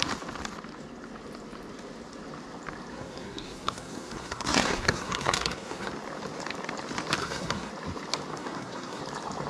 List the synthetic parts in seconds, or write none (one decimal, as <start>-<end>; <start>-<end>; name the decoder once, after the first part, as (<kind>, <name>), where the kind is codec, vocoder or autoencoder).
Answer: 2.9-5.9 (codec, SNAC); 7.2-7.7; 8.3-9.0